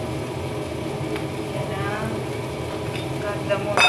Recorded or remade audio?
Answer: recorded